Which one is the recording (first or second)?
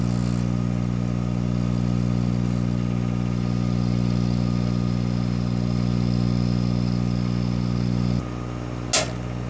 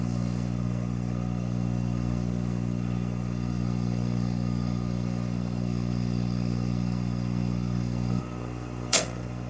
first